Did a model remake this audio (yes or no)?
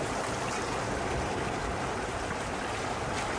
no